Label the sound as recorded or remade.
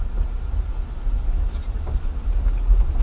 recorded